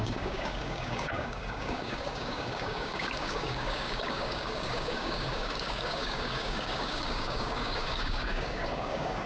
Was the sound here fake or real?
fake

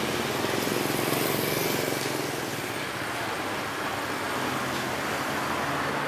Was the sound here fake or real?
real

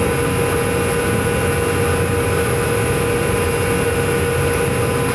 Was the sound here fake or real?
real